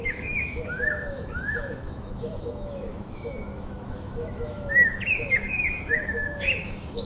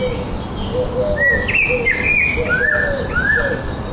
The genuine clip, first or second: second